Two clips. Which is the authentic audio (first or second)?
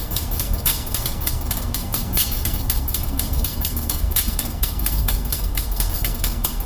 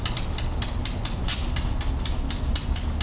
second